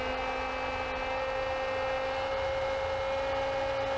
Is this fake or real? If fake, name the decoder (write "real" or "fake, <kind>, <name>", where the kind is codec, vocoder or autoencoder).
real